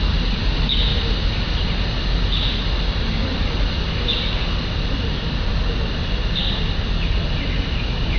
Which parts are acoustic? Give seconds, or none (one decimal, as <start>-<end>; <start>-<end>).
0.0-8.2